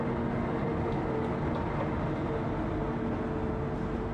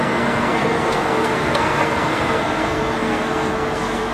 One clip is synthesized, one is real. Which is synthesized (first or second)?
second